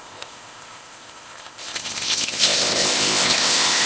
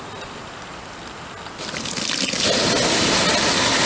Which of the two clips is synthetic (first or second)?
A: first